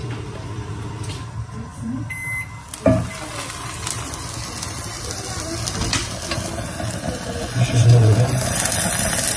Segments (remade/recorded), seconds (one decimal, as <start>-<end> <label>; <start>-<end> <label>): 0.0-7.4 recorded; 7.4-8.5 remade; 8.5-9.4 recorded